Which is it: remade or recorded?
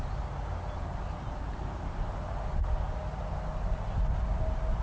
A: recorded